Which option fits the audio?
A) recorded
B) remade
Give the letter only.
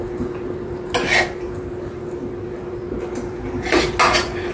A